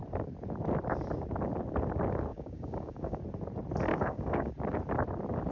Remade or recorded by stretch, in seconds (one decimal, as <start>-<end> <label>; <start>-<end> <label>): 0.0-2.3 recorded; 2.3-3.2 remade; 3.2-3.9 recorded; 3.9-4.5 remade; 4.5-5.5 recorded